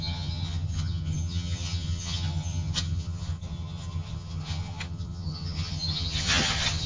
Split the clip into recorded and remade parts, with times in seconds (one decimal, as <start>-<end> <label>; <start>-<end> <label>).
0.0-6.9 remade